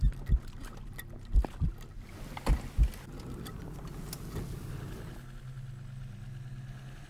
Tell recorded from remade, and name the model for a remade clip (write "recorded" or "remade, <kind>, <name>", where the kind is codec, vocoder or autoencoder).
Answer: recorded